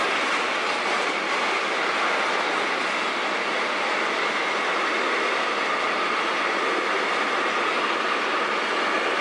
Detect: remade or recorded recorded